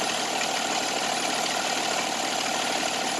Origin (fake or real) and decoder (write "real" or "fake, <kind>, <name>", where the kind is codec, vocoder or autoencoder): real